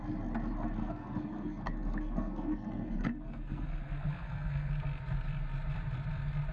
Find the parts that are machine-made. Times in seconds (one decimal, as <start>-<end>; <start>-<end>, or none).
0.8-4.7